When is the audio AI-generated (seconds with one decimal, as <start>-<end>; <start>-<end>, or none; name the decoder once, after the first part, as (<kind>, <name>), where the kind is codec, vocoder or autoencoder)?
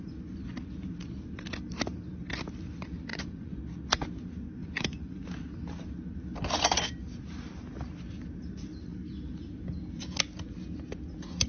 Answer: 3.1-3.6 (vocoder, Vocos); 4.6-5.2